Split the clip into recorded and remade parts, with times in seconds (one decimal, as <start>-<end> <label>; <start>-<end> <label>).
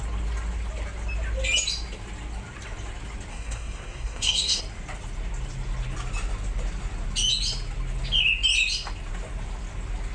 0.0-3.3 recorded; 3.3-4.6 remade; 4.6-10.1 recorded